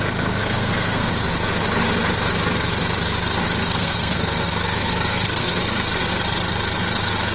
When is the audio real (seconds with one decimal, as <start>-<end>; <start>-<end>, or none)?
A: 0.0-0.4; 1.1-3.6; 5.6-7.3